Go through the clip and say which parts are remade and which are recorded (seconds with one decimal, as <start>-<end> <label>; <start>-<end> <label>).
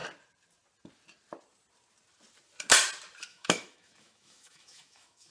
0.0-3.3 recorded; 3.3-5.3 remade